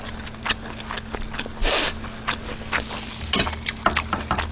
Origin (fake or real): real